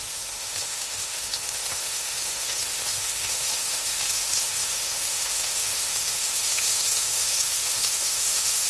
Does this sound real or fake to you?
fake